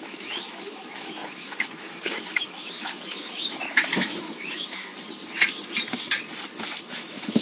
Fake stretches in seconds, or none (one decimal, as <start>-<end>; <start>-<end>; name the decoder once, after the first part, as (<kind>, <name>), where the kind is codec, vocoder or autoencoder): 0.0-4.9 (autoencoder, DAC-VAE); 6.9-7.4